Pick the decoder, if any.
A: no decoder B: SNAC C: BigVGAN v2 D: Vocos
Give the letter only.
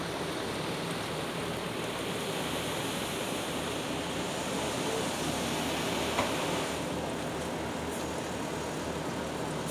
A